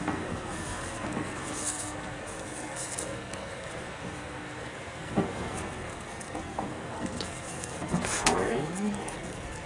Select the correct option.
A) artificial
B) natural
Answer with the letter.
A